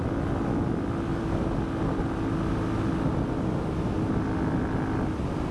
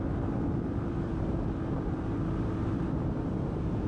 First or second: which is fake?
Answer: second